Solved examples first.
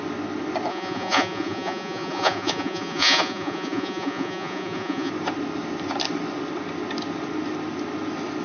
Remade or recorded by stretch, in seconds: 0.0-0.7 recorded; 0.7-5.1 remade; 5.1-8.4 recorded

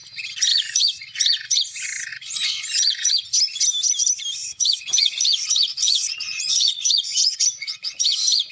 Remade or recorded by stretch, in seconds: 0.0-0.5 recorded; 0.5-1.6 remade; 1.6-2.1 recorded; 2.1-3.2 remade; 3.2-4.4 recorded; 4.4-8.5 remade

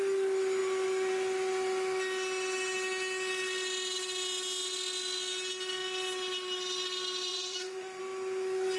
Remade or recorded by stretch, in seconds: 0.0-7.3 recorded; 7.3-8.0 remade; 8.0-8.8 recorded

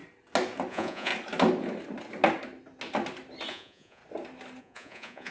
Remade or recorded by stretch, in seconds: 0.0-0.7 recorded; 0.7-1.1 remade; 1.1-3.5 recorded; 3.5-4.0 remade; 4.0-4.6 recorded; 4.6-5.3 remade